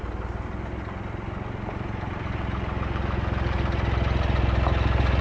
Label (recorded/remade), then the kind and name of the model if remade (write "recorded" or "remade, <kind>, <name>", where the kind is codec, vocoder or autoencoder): recorded